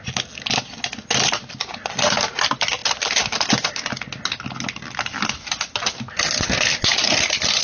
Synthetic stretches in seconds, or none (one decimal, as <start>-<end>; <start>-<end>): none

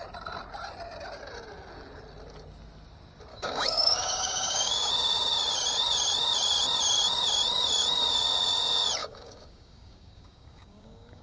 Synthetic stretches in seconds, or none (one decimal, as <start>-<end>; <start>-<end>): 3.3-4.9; 9.0-11.2